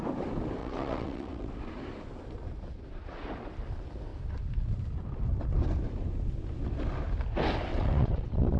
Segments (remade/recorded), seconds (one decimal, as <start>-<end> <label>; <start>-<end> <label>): 0.0-0.6 recorded; 0.6-1.5 remade; 1.5-7.7 recorded; 7.7-8.6 remade